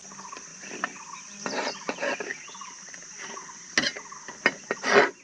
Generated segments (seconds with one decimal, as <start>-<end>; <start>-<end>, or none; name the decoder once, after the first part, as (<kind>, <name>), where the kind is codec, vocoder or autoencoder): 0.5-1.9 (vocoder, BigVGAN v2)